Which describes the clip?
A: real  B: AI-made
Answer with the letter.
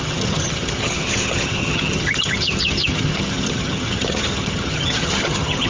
B